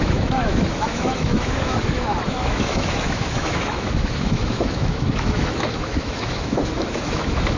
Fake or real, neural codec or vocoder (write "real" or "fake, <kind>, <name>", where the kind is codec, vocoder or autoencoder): fake, autoencoder, DAC-VAE